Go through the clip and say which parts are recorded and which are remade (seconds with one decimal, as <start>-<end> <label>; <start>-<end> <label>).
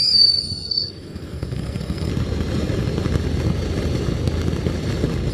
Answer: 0.0-2.1 remade; 2.1-5.3 recorded